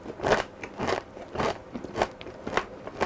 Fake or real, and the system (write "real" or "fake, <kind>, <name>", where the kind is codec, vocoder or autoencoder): real